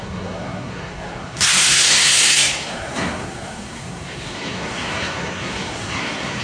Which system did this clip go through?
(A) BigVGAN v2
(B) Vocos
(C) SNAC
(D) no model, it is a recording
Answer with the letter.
C